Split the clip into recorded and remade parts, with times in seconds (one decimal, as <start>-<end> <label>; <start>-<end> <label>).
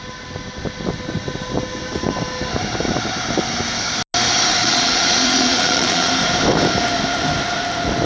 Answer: 0.0-4.6 recorded; 4.6-6.1 remade; 6.1-8.1 recorded